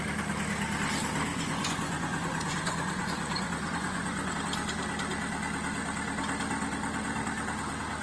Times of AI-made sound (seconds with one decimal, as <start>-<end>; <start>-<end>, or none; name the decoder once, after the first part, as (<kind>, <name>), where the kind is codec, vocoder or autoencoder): 1.3-4.3 (vocoder, Vocos)